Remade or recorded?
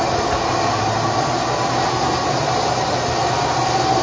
recorded